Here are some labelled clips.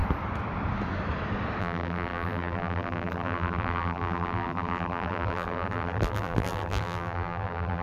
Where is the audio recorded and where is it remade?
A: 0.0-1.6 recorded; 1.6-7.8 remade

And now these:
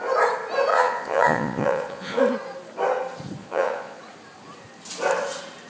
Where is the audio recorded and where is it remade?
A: 0.0-0.7 recorded; 0.7-2.2 remade; 2.2-3.4 recorded; 3.4-4.0 remade; 4.0-5.7 recorded

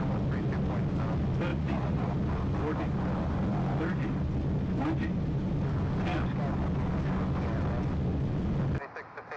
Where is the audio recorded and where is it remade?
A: 0.0-1.5 recorded; 1.5-2.1 remade; 2.1-9.4 recorded

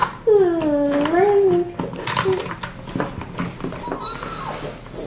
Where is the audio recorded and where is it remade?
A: 0.0-5.1 recorded

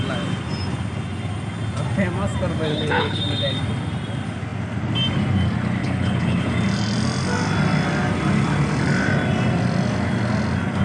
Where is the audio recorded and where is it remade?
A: 0.0-2.7 recorded; 2.7-3.2 remade; 3.2-5.8 recorded; 5.8-6.5 remade; 6.5-10.8 recorded

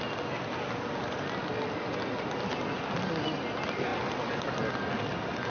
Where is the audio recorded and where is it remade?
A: 0.0-5.5 recorded

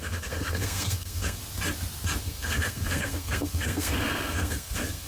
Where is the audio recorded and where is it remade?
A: 0.0-1.4 remade; 1.4-2.2 recorded; 2.2-5.1 remade

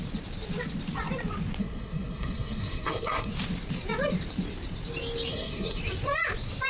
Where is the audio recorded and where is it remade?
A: 0.0-1.6 recorded; 1.6-3.3 remade; 3.3-5.3 recorded; 5.3-5.8 remade; 5.8-6.7 recorded